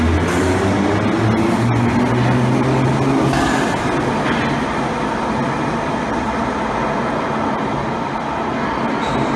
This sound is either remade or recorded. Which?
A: recorded